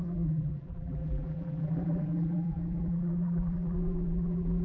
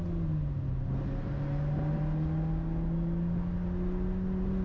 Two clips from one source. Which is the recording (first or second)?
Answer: second